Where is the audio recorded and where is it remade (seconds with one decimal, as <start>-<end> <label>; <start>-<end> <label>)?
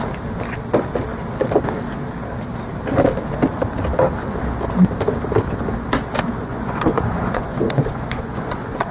0.0-6.4 recorded; 6.4-8.9 remade